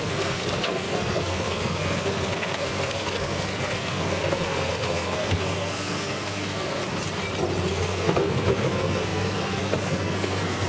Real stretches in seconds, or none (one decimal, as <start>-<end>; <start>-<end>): 6.8-7.7